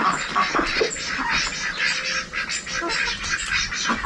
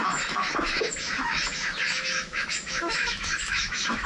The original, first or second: first